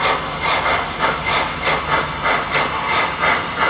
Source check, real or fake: real